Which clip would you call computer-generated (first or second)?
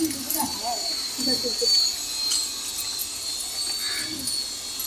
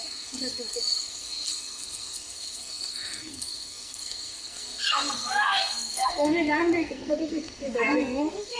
second